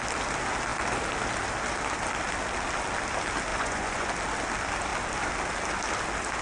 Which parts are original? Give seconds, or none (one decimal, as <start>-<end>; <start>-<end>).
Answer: 0.0-3.5; 4.1-6.4